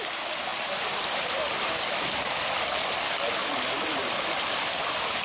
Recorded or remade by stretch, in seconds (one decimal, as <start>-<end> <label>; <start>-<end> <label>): 0.0-0.5 recorded; 0.5-1.9 remade; 1.9-3.4 recorded; 3.4-4.5 remade; 4.5-5.2 recorded